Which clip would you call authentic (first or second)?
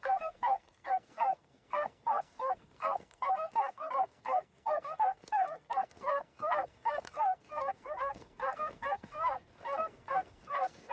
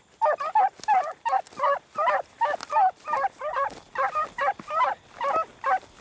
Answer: second